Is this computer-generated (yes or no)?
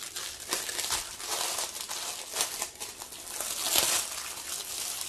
no